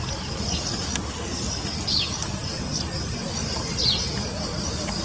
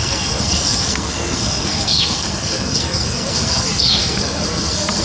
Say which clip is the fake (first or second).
second